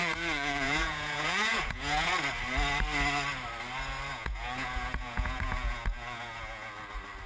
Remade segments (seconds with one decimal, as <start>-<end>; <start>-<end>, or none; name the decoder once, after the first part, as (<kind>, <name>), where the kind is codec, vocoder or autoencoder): 0.0-2.1 (vocoder, Vocos); 4.1-6.7